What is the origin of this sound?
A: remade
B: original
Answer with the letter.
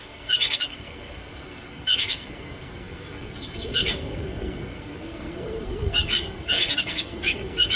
A